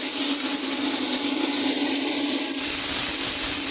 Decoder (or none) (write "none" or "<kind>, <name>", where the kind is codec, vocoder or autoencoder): none